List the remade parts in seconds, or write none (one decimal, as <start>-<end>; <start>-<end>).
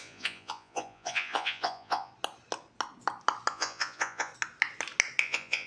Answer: 0.0-2.1; 3.5-4.3; 5.2-5.7